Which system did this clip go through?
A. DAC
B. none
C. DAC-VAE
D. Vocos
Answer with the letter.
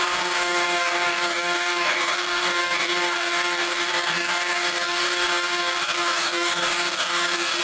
A